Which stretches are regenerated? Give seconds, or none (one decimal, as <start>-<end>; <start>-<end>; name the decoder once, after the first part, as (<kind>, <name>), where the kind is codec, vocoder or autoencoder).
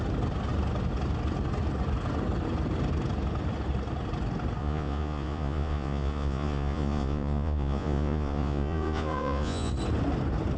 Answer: 4.6-9.7 (vocoder, Vocos)